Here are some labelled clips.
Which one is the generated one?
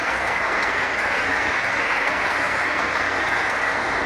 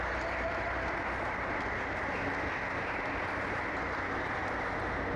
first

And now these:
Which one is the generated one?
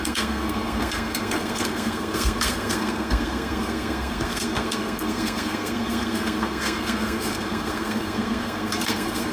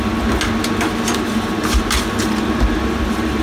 first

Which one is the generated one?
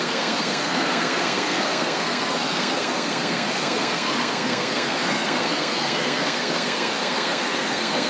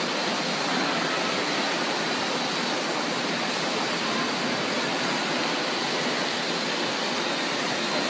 first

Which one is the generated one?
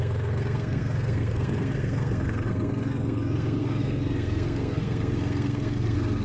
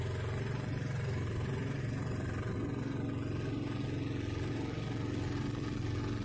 first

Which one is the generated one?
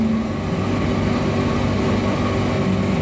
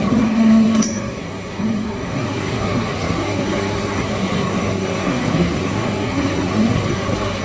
second